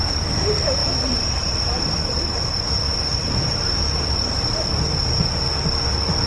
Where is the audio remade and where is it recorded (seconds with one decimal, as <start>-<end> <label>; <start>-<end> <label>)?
0.0-0.8 recorded; 0.8-4.6 remade; 4.6-6.3 recorded